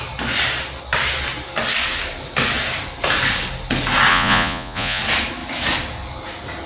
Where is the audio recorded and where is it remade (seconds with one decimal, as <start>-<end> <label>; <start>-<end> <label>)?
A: 0.0-4.1 recorded; 4.1-5.0 remade; 5.0-6.7 recorded